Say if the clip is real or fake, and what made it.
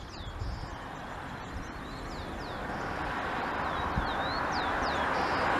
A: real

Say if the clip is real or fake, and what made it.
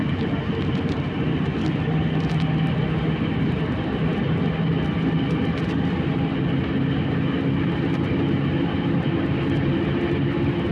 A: real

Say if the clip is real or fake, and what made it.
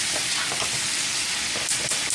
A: real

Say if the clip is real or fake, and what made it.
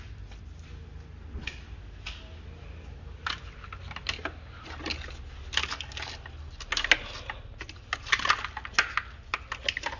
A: real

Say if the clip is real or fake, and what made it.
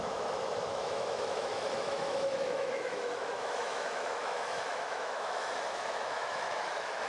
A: fake, autoencoder, DAC-VAE